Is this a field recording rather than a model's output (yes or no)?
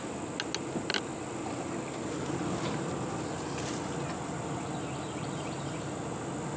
yes